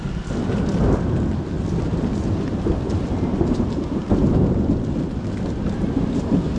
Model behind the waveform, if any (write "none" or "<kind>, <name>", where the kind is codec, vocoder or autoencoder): none